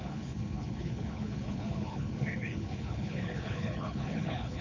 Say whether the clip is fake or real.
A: fake